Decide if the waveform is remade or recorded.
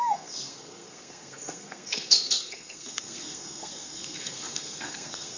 remade